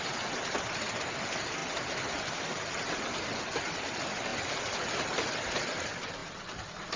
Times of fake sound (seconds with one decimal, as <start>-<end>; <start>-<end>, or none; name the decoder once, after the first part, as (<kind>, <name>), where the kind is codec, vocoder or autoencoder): none